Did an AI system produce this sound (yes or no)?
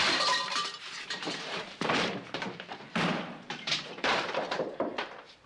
yes